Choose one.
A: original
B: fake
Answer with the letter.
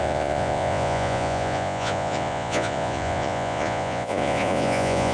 B